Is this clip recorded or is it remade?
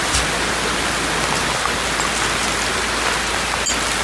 recorded